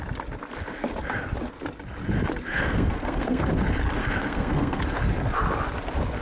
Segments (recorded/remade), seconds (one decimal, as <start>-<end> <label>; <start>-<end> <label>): 0.0-2.5 recorded; 2.5-3.5 remade; 3.5-4.0 recorded; 4.0-4.8 remade; 4.8-6.2 recorded